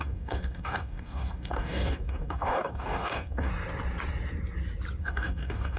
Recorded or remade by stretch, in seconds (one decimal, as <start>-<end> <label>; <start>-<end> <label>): 0.0-3.5 remade; 3.5-5.0 recorded; 5.0-5.8 remade